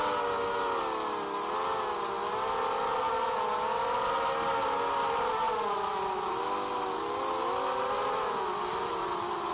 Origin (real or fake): real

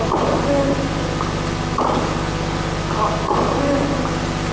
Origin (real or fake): real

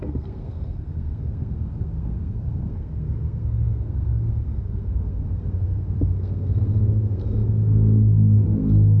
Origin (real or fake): fake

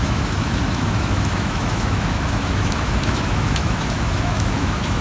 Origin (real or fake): fake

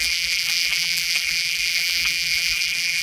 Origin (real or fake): fake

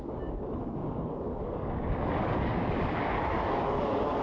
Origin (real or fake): fake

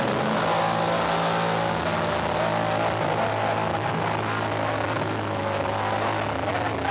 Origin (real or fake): real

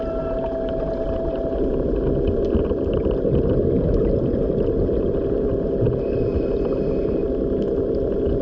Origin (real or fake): real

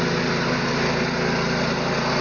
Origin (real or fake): real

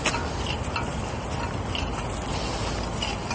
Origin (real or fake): real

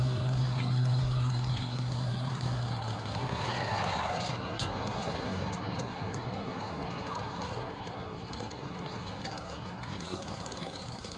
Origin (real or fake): fake